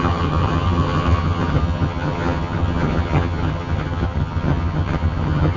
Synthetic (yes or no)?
yes